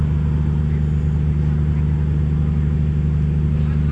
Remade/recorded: recorded